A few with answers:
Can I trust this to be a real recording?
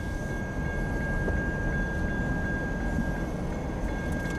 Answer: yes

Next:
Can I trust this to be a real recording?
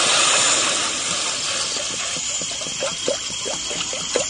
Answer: yes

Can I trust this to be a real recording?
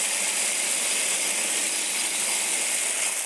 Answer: yes